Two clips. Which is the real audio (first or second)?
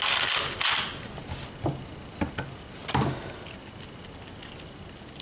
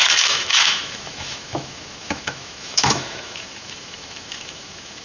first